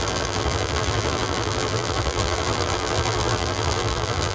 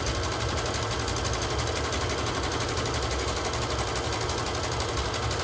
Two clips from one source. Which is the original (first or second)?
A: second